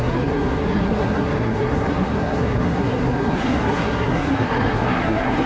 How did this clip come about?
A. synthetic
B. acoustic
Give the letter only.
A